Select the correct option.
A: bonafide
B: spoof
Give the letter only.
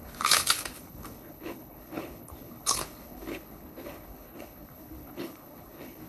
B